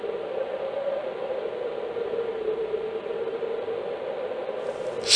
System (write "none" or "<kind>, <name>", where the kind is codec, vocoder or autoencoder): none